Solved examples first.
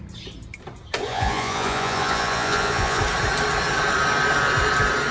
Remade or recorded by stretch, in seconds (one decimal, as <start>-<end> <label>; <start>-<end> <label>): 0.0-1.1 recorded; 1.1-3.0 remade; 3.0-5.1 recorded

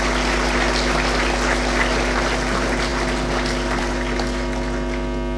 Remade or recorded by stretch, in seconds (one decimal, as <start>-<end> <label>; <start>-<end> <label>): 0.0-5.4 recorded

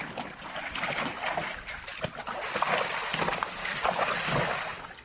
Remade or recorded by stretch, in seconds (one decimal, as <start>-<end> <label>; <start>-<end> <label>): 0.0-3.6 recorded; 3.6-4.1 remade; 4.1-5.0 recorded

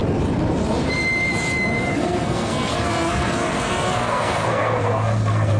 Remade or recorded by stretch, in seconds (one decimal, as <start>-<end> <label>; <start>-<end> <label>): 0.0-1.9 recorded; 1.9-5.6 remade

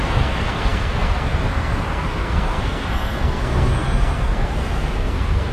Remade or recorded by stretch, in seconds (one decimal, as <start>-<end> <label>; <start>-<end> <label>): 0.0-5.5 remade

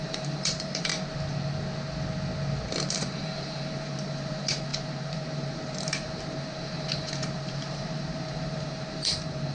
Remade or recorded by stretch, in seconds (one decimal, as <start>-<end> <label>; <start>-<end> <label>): 0.0-0.9 remade; 0.9-2.9 recorded; 2.9-9.5 remade

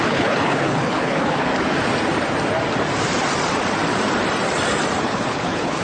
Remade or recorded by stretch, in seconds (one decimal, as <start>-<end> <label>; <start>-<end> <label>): 0.0-1.5 remade; 1.5-5.0 recorded; 5.0-5.8 remade